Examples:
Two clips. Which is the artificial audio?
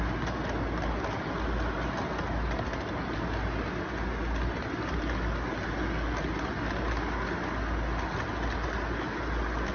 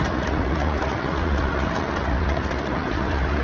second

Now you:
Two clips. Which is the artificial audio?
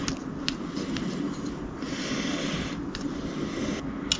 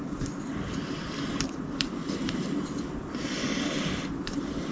second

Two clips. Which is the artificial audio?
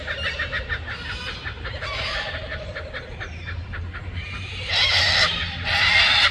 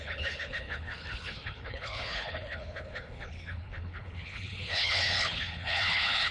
second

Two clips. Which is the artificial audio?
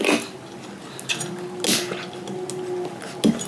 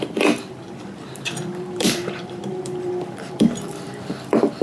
second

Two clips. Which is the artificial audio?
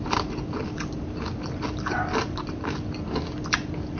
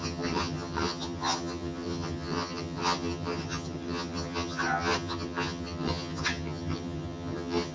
second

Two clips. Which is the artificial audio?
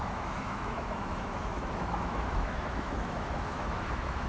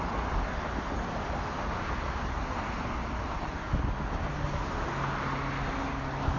first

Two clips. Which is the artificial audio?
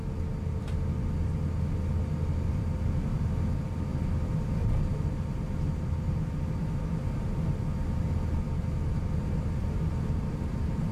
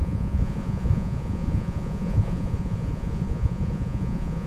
second